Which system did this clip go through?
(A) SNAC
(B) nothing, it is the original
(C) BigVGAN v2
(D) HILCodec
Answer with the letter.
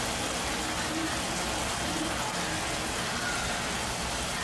B